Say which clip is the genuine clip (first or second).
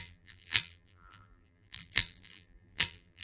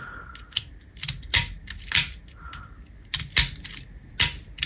second